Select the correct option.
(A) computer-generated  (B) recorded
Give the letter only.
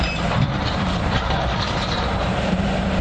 A